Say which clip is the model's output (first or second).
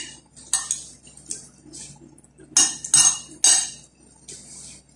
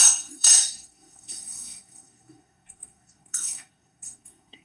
second